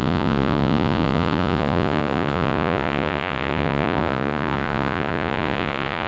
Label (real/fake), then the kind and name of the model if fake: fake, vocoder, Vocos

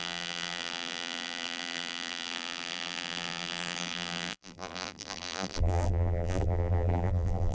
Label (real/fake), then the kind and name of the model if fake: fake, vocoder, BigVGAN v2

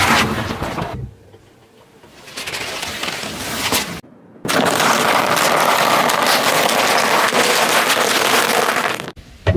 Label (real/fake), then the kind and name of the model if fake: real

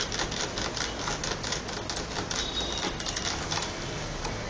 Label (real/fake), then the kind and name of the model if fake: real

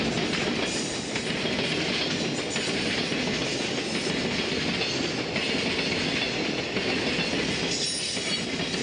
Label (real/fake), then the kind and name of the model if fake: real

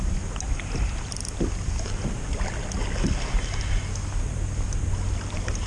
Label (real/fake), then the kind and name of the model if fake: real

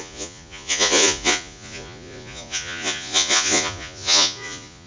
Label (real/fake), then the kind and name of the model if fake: fake, vocoder, Vocos